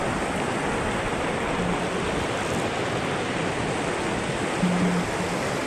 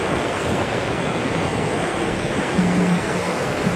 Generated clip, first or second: second